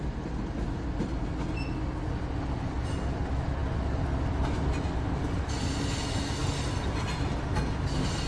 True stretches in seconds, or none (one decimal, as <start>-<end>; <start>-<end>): 0.0-8.3